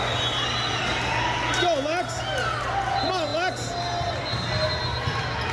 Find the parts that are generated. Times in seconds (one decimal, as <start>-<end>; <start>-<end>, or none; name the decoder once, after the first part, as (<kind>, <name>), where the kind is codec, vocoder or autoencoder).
none